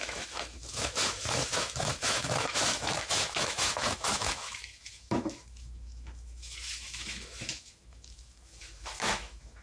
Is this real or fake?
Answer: fake